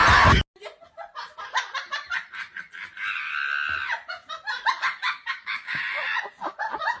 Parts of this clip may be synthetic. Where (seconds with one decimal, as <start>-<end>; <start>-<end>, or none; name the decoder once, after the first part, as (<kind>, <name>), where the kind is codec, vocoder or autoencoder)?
5.0-5.8 (codec, DAC)